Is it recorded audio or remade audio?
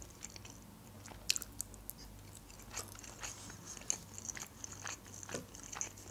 recorded